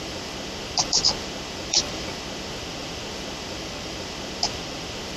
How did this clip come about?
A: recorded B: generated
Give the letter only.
B